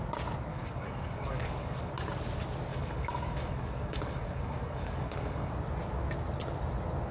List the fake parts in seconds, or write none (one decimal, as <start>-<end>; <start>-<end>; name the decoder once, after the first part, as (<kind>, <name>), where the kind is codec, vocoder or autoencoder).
0.5-1.9 (codec, DAC); 2.7-5.5